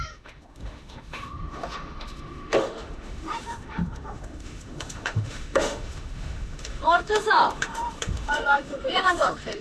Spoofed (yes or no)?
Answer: yes